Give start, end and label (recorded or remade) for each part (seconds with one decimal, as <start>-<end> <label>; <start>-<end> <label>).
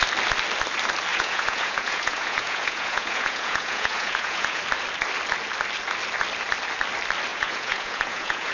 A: 0.0-1.1 recorded; 1.1-4.6 remade; 4.6-7.3 recorded; 7.3-8.5 remade